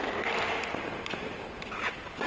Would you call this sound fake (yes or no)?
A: no